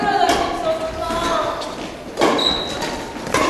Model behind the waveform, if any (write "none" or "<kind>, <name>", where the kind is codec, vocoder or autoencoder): none